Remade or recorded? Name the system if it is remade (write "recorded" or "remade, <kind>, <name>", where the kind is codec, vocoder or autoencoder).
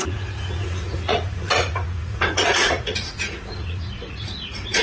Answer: remade, vocoder, Vocos